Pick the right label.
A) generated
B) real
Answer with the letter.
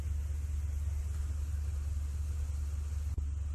B